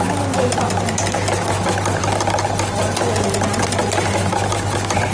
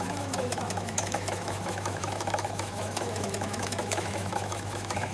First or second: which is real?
first